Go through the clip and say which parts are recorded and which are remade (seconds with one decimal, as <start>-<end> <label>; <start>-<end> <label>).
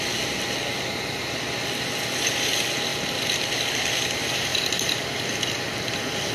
0.0-6.3 recorded